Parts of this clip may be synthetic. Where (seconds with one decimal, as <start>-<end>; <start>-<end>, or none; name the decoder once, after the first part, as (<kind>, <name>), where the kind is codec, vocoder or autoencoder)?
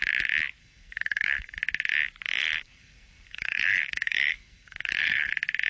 0.6-1.6 (codec, SNAC); 2.4-5.3